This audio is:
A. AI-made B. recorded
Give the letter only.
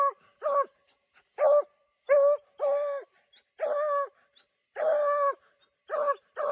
B